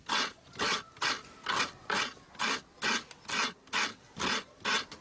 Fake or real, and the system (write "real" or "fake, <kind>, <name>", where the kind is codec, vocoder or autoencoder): real